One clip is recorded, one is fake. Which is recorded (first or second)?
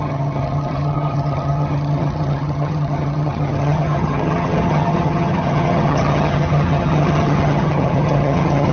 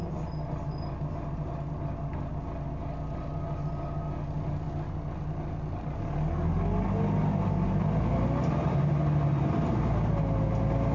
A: second